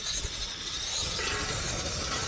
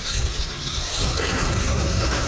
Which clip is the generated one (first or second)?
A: second